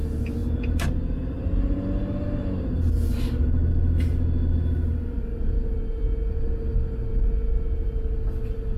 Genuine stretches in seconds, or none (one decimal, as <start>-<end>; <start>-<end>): 0.0-8.8